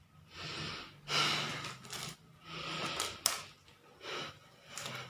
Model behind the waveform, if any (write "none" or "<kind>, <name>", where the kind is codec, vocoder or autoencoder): none